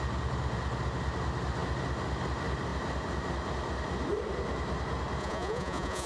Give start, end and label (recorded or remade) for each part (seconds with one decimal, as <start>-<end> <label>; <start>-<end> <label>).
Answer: 0.0-5.2 recorded; 5.2-6.1 remade